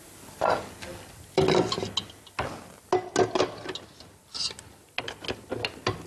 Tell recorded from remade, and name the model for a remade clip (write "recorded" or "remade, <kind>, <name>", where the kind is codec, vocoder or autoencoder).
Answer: recorded